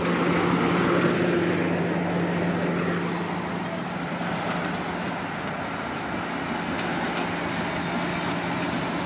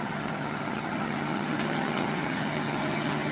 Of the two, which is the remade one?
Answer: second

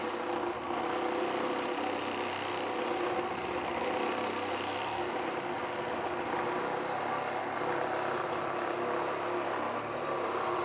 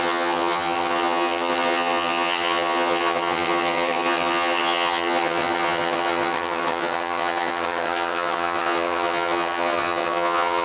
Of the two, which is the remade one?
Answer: second